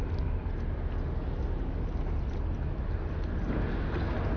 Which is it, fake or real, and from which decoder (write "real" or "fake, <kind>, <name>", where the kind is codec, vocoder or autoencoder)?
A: real